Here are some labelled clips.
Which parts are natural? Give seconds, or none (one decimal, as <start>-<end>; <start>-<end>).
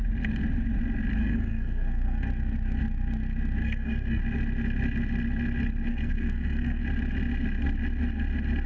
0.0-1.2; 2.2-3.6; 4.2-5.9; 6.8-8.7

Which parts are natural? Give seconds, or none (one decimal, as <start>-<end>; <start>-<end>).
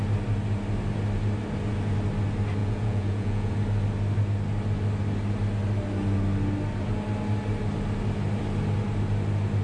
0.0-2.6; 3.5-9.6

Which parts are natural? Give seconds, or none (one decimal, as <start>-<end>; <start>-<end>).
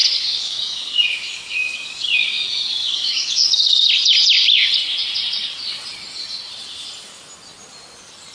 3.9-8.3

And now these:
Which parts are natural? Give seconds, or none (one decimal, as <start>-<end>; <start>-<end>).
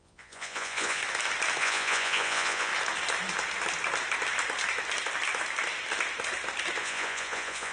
1.0-1.6; 2.7-6.8